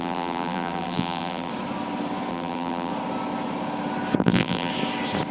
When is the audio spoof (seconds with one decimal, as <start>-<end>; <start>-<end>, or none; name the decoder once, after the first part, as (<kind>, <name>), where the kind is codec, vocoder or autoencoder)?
0.0-1.5 (vocoder, BigVGAN v2); 2.3-2.9; 4.2-4.7